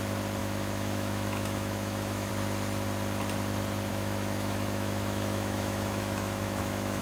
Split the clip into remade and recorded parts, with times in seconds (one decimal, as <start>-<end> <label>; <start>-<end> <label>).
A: 0.0-0.4 recorded; 0.4-2.3 remade; 2.3-3.9 recorded; 3.9-7.0 remade